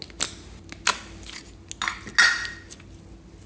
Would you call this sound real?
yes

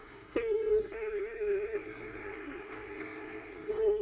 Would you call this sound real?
no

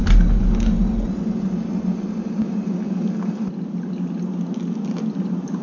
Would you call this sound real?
yes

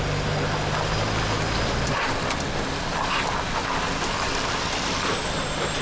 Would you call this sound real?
yes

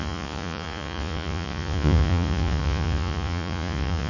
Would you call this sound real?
no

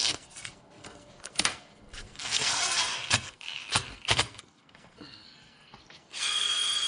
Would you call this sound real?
no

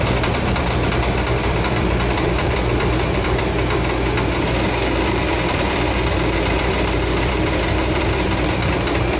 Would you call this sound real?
no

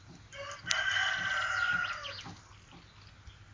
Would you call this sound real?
yes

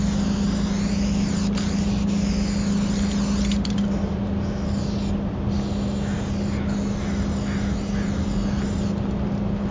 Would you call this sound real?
yes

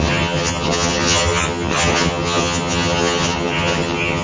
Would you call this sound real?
no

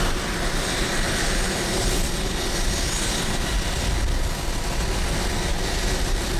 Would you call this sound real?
yes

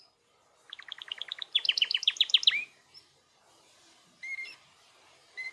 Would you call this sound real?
no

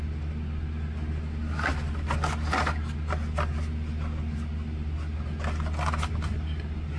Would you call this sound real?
yes